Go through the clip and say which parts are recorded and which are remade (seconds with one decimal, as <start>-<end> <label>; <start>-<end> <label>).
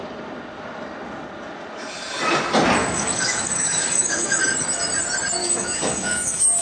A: 0.0-2.8 recorded; 2.8-4.4 remade; 4.4-5.4 recorded; 5.4-6.6 remade